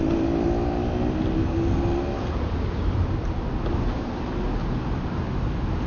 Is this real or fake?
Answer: real